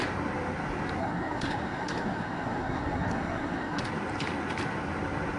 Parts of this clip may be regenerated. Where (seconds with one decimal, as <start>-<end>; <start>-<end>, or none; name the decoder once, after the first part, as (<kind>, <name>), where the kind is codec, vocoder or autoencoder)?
1.0-3.8 (codec, SNAC)